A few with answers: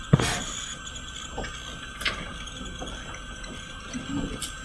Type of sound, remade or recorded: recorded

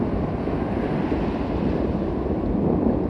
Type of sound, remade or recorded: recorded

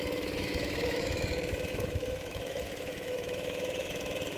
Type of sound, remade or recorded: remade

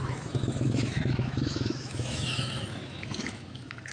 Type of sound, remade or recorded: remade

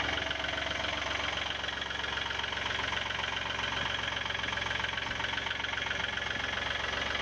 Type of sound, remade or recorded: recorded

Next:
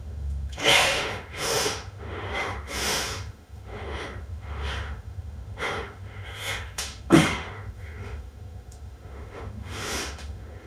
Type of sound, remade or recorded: remade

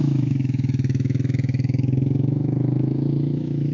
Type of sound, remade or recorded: remade